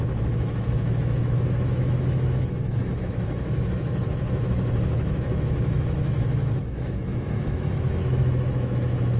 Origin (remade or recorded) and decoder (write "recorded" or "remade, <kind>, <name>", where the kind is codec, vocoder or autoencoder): remade, autoencoder, DAC-VAE